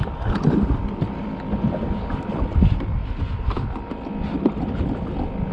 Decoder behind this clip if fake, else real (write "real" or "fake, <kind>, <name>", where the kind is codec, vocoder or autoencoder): real